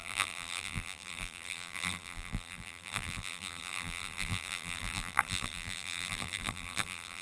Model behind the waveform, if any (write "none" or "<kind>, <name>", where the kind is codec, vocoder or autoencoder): vocoder, BigVGAN v2